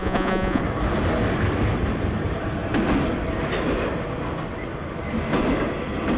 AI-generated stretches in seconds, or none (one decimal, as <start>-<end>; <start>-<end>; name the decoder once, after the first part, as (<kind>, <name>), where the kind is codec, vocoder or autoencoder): 0.0-0.6 (vocoder, Vocos)